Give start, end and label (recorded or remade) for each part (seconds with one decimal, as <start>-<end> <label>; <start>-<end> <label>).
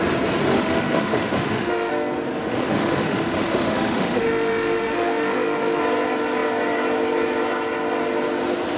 0.0-0.5 recorded; 0.5-1.9 remade; 1.9-2.4 recorded; 2.4-5.8 remade; 5.8-8.8 recorded